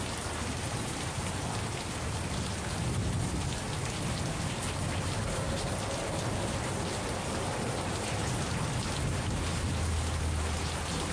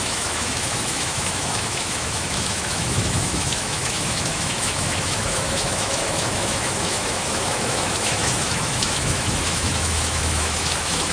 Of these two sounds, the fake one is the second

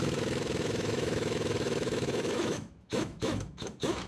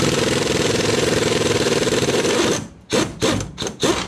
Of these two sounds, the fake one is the first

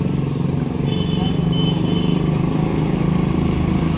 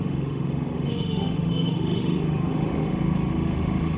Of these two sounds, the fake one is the second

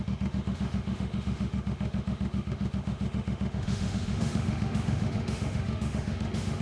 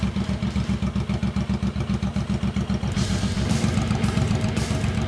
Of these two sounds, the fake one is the first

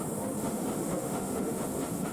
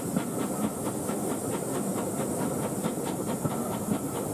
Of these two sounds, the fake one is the first